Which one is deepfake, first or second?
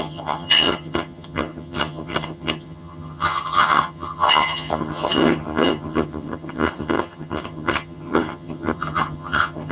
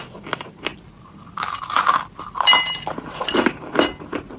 first